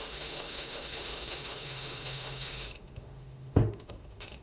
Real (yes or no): no